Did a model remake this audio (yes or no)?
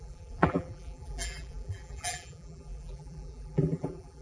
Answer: yes